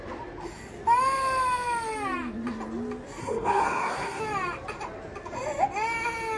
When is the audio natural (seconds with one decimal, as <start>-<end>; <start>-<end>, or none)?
0.0-3.2; 4.2-6.4